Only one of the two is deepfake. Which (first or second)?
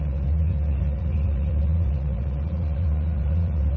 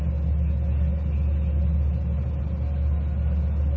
first